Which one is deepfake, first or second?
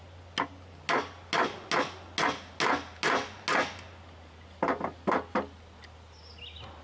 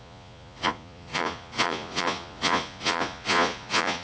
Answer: second